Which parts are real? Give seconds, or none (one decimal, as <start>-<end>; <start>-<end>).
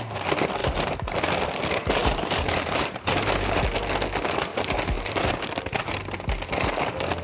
0.0-0.6; 1.2-2.0; 3.6-4.5; 5.3-7.2